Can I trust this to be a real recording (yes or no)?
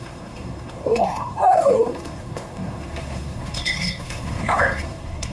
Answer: no